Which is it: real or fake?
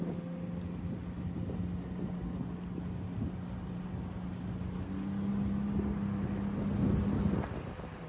real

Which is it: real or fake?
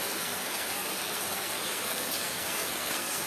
fake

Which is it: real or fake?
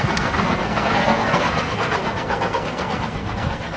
fake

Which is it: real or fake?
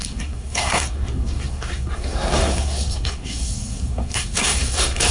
fake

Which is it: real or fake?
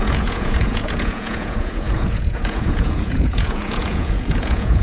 fake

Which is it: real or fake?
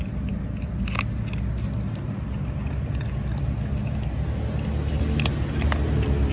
real